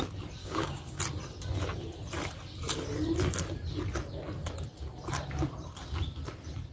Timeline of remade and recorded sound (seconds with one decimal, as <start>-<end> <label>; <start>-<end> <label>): 0.0-0.4 recorded; 0.4-1.0 remade; 1.0-6.7 recorded